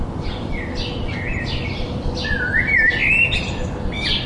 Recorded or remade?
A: recorded